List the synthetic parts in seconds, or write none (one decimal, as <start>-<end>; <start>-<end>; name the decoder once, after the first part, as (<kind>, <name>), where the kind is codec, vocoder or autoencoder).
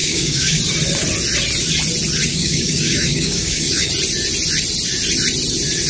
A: 0.0-0.6 (codec, DAC); 2.3-3.9